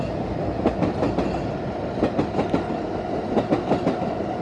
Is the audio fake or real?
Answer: real